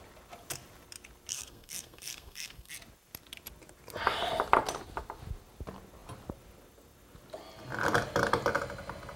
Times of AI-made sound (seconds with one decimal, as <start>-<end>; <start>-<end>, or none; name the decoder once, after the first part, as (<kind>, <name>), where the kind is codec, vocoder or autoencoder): 1.3-2.7 (codec, SNAC)